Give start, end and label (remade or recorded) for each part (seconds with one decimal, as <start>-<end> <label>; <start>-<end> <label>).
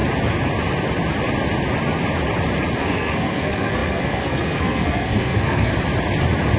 0.0-2.8 recorded; 2.8-5.7 remade; 5.7-6.6 recorded